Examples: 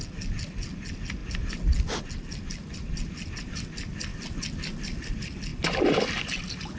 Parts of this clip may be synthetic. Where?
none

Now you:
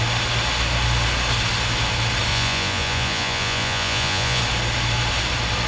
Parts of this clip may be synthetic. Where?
2.3-4.4 (vocoder, Vocos)

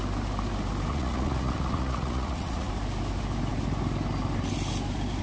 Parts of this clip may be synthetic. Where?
0.9-2.7 (vocoder, Vocos)

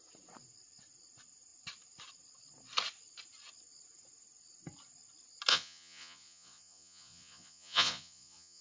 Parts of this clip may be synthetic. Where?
5.5-8.6 (vocoder, Vocos)

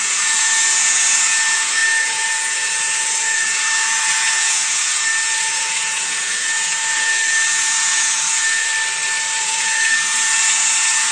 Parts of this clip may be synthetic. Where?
0.0-8.7 (vocoder, Vocos); 9.4-11.1

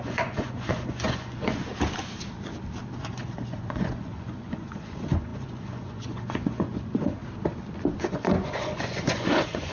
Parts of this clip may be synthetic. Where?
0.0-1.6 (vocoder, Vocos); 3.0-7.2; 8.0-9.7

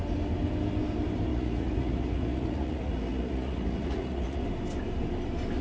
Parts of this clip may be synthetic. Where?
1.3-4.4 (vocoder, Vocos)